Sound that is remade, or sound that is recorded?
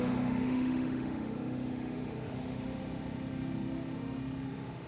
remade